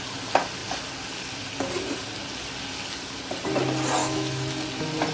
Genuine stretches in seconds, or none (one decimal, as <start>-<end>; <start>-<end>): 0.0-4.0; 4.5-5.1